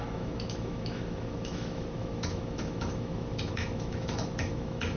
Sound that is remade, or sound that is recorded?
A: remade